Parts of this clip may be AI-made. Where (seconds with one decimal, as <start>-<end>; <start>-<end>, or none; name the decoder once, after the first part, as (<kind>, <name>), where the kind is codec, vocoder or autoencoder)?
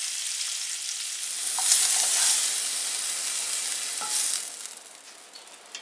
none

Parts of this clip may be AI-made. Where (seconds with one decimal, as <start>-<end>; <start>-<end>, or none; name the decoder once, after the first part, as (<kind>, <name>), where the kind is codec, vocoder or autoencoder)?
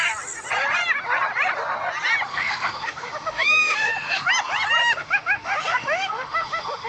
2.3-4.3 (autoencoder, DAC-VAE); 4.8-6.9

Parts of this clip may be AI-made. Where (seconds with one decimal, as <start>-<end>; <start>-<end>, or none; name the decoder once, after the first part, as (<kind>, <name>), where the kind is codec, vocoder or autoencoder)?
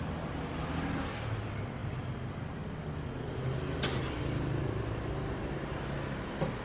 none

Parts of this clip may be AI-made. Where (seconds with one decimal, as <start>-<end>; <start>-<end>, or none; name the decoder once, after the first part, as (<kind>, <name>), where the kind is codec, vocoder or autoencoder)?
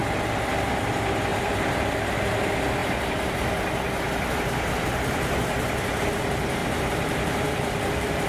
1.3-1.8 (vocoder, BigVGAN v2); 6.6-8.3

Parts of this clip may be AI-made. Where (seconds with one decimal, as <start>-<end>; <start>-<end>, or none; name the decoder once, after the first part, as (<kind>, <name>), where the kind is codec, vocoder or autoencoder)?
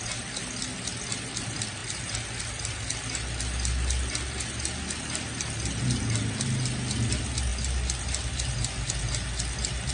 none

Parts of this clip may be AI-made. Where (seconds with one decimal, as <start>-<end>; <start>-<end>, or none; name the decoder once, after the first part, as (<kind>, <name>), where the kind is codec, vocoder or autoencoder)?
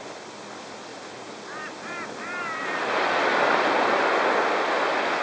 none